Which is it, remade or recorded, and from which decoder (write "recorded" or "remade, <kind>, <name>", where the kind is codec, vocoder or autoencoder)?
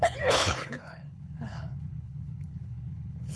remade, codec, HILCodec